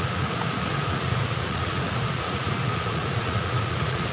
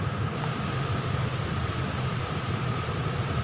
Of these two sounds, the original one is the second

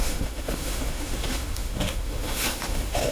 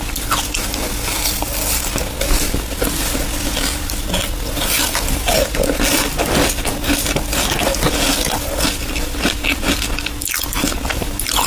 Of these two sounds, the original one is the second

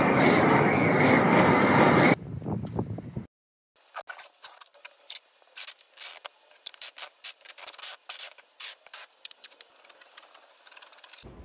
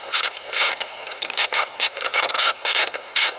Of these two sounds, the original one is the first